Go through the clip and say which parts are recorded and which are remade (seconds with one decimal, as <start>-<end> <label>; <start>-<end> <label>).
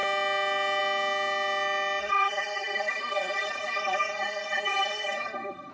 0.0-2.0 recorded; 2.0-5.7 remade